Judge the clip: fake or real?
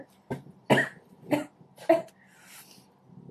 real